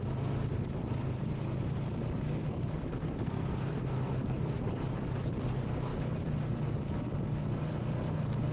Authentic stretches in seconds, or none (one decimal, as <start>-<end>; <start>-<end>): 0.0-2.4; 4.6-8.5